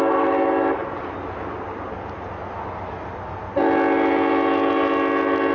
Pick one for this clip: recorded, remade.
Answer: recorded